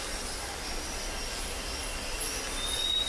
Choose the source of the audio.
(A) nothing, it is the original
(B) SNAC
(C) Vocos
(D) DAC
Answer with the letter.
A